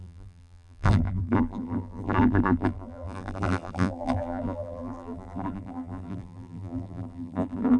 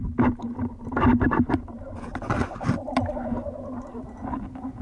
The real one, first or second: second